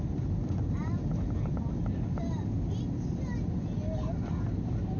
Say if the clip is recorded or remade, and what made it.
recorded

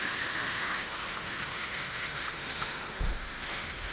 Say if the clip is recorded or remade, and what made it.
remade, autoencoder, DAC-VAE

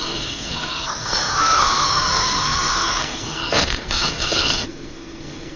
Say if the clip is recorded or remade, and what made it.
remade, codec, SNAC